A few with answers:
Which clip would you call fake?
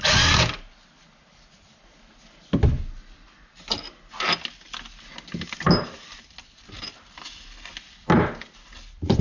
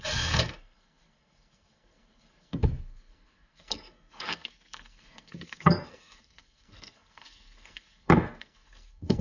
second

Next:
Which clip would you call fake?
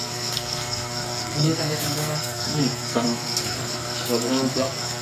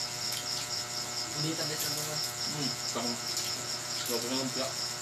first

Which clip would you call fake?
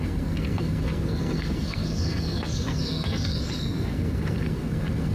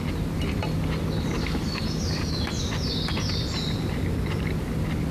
first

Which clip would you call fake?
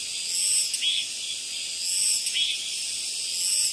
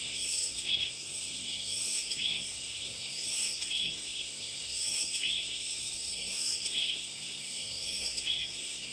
second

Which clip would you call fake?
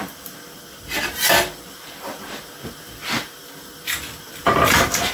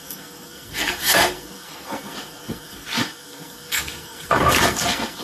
second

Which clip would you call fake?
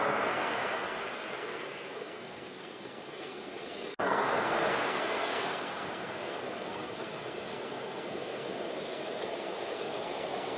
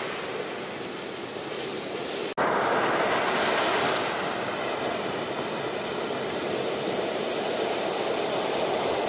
first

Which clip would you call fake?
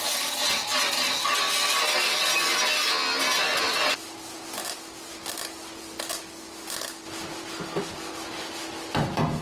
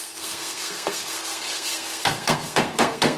second